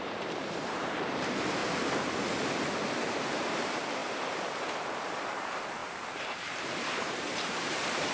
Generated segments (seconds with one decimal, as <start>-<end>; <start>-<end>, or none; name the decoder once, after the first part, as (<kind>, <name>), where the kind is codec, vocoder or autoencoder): 0.0-1.6 (vocoder, BigVGAN v2); 3.1-4.0; 5.0-8.1